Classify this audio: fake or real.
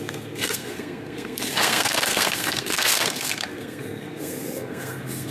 fake